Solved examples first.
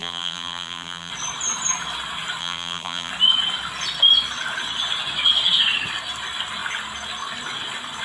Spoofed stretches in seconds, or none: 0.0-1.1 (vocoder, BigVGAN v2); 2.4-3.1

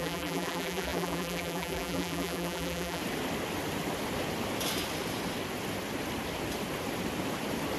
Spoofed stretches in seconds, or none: 0.0-3.0 (vocoder, BigVGAN v2)

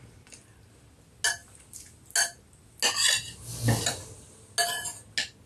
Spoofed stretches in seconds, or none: none

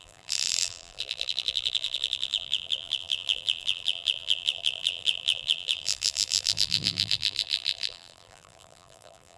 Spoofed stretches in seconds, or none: 0.0-9.4 (vocoder, BigVGAN v2)

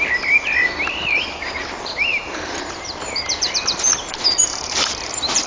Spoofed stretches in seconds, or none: 2.1-5.1 (vocoder, BigVGAN v2)